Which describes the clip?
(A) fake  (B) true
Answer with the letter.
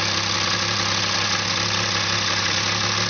B